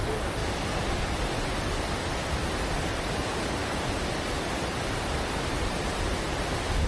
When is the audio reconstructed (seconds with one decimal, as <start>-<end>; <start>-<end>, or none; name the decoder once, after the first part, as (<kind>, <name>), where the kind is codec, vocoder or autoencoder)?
none